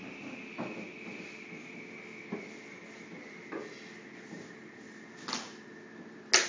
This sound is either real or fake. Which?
real